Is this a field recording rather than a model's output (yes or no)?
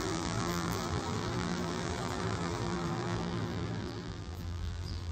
no